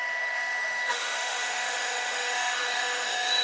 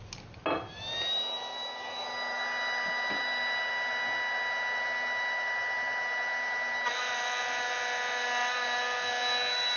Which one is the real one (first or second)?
second